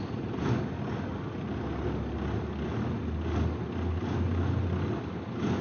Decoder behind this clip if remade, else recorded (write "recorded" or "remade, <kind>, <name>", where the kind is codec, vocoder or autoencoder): recorded